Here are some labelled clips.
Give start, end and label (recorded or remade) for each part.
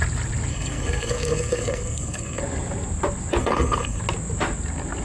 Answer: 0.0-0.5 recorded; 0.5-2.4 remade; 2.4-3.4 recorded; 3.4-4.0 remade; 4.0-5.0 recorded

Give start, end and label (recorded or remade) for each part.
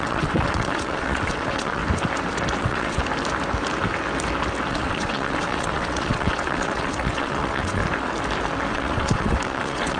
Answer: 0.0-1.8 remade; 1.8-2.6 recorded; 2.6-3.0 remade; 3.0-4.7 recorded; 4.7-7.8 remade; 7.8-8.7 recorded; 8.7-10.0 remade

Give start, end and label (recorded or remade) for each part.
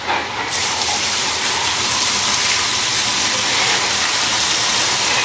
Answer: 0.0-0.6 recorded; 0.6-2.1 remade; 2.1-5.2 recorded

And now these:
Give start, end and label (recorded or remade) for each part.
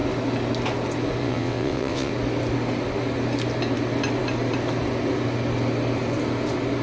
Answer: 0.0-1.2 recorded; 1.2-2.1 remade; 2.1-6.8 recorded